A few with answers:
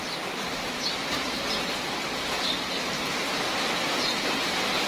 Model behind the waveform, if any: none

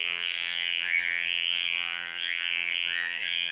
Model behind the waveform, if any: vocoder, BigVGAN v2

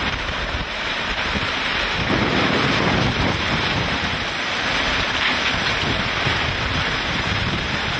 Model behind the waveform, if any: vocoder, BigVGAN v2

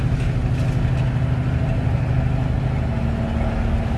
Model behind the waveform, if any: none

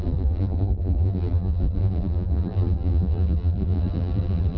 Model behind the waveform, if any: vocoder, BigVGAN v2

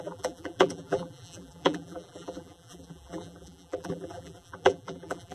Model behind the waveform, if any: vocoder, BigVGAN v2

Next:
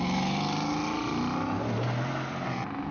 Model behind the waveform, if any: none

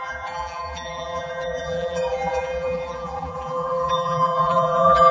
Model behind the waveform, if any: vocoder, BigVGAN v2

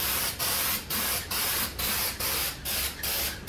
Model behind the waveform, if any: vocoder, BigVGAN v2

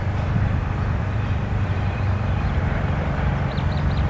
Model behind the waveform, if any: vocoder, BigVGAN v2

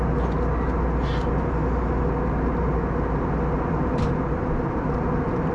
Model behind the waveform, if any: none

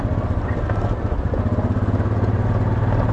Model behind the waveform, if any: none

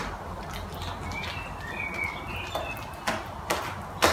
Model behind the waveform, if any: none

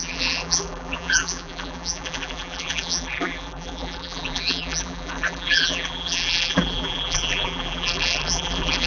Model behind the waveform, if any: vocoder, BigVGAN v2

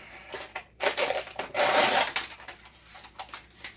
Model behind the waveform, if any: vocoder, BigVGAN v2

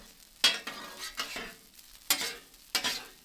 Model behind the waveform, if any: none